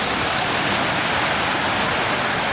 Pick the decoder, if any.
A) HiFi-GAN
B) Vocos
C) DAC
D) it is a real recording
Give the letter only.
D